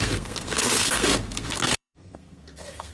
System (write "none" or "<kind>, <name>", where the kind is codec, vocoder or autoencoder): codec, SNAC